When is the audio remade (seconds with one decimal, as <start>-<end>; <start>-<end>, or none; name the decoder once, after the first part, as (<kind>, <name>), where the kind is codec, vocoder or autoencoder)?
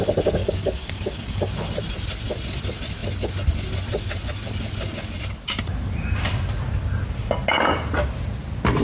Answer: 0.4-1.5 (codec, DAC)